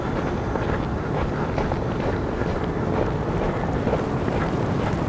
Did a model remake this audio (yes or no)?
no